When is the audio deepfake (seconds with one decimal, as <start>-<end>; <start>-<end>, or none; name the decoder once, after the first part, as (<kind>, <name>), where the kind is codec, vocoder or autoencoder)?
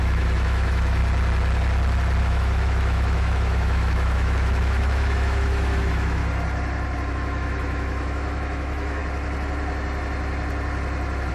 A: 0.0-1.0 (autoencoder, DAC-VAE); 2.2-6.2; 7.1-9.0